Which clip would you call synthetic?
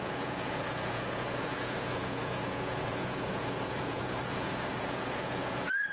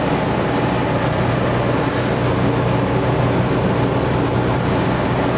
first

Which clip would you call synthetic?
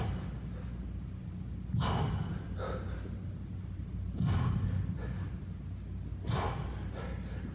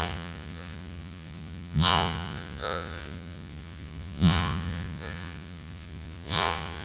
second